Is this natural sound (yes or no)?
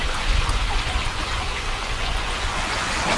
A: no